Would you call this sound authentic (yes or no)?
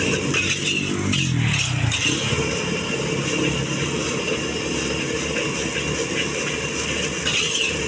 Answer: yes